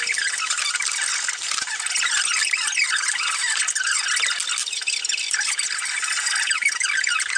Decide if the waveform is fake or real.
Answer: real